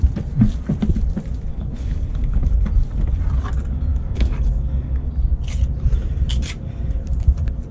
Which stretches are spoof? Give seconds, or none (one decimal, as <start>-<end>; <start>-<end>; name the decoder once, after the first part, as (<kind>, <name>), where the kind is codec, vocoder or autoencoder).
1.5-2.5 (codec, DAC); 3.9-5.1